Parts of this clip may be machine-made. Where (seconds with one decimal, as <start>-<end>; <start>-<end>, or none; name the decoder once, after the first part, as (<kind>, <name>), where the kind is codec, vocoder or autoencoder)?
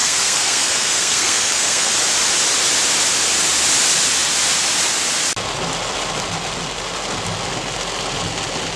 0.0-1.9 (codec, SNAC)